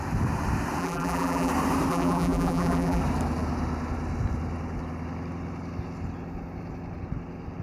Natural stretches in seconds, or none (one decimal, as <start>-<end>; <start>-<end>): 0.0-0.8; 1.5-1.9; 3.0-7.6